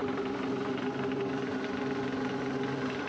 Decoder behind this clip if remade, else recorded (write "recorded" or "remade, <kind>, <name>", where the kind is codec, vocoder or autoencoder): recorded